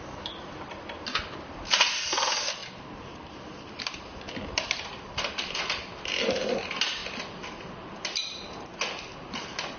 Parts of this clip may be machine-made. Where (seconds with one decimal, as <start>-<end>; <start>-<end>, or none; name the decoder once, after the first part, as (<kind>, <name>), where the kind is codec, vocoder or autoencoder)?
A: none